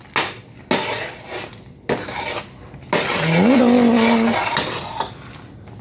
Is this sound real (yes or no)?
yes